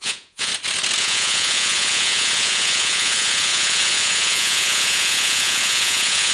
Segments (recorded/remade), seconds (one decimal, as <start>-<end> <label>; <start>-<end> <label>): 0.0-0.5 remade; 0.5-1.0 recorded; 1.0-6.3 remade